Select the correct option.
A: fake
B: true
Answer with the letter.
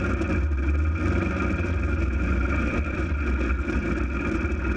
B